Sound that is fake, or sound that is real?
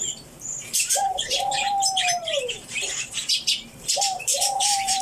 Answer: fake